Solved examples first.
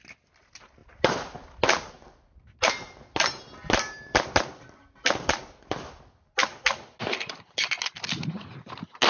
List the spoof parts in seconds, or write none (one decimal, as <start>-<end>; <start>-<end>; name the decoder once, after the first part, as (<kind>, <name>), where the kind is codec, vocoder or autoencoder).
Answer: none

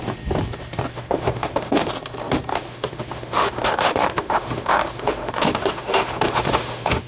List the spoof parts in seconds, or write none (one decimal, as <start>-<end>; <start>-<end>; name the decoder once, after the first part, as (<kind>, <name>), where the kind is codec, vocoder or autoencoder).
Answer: 0.9-1.9 (autoencoder, DAC-VAE); 2.5-7.1

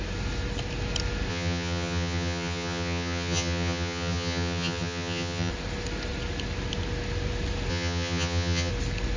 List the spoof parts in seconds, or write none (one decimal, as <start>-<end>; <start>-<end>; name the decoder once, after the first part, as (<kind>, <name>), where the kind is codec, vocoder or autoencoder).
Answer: 1.3-5.5 (vocoder, HiFi-GAN); 7.7-8.7

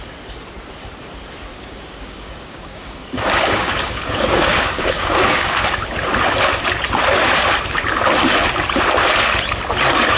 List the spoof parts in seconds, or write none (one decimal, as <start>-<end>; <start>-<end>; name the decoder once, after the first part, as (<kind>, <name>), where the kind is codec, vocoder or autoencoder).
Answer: 1.5-5.6 (codec, DAC)

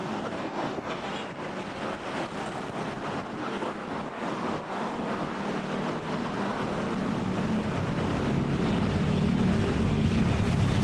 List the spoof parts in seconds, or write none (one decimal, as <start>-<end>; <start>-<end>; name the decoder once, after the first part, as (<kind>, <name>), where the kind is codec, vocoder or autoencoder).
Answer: 0.0-1.1 (codec, DAC); 3.4-5.4; 9.5-10.2